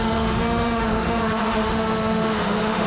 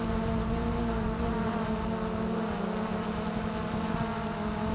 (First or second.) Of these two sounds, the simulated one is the first